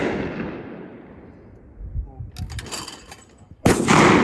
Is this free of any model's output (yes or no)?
yes